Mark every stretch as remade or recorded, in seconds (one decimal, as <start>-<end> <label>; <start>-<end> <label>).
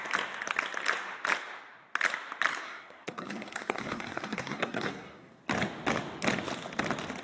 0.0-2.5 recorded; 2.5-5.4 remade; 5.4-7.2 recorded